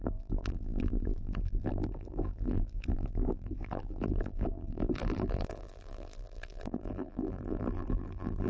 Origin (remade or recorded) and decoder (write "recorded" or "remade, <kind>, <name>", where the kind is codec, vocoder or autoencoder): remade, vocoder, BigVGAN v2